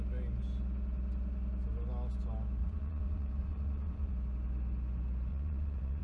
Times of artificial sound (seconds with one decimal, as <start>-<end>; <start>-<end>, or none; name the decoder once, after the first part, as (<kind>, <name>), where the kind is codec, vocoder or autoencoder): 2.6-4.1 (vocoder, Vocos); 5.3-6.0